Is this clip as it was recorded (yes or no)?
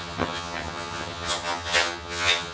no